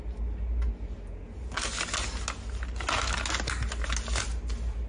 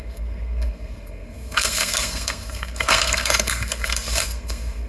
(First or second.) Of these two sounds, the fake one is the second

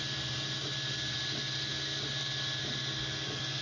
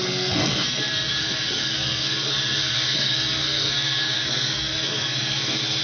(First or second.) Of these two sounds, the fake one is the second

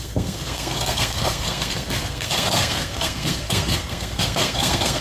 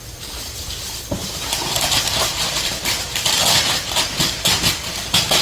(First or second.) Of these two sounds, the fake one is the first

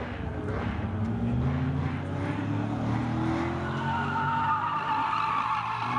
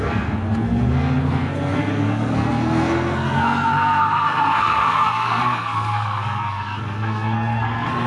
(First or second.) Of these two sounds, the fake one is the second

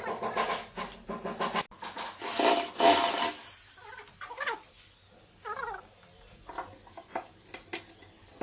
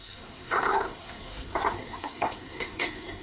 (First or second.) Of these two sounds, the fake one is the second